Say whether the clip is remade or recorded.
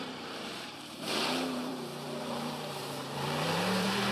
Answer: remade